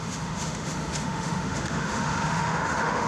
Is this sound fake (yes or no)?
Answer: yes